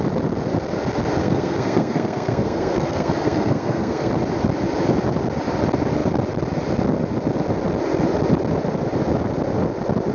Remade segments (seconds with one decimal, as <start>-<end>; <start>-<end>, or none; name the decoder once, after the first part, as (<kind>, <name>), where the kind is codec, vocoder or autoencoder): 1.2-4.1 (codec, SNAC)